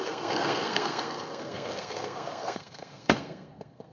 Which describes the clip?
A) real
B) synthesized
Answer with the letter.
B